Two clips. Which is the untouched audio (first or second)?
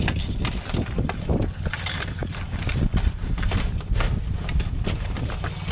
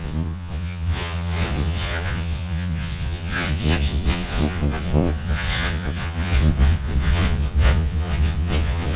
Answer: first